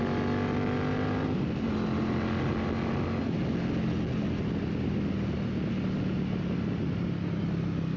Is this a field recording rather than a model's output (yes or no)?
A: yes